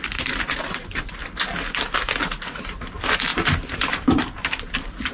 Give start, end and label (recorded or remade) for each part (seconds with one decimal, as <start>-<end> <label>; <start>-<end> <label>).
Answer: 0.0-1.2 remade; 1.2-2.2 recorded; 2.2-5.1 remade